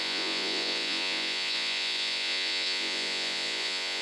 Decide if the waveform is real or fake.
fake